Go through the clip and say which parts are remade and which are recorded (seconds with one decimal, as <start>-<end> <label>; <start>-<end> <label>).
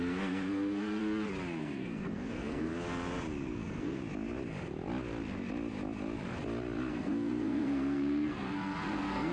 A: 0.0-1.0 remade; 1.0-1.6 recorded; 1.6-2.7 remade; 2.7-3.5 recorded; 3.5-4.0 remade; 4.0-6.9 recorded; 6.9-9.3 remade